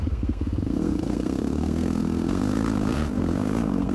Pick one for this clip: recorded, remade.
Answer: remade